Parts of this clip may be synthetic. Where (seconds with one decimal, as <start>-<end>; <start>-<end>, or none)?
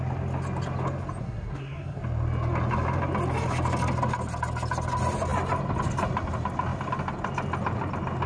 1.2-2.0